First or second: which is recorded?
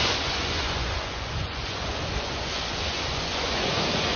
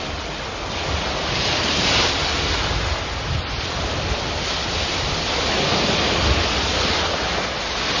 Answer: second